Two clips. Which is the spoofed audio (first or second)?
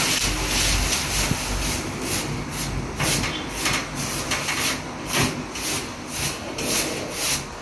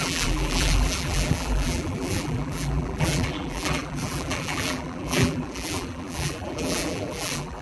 second